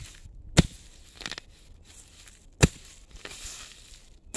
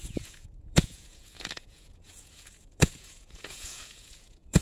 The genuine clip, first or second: first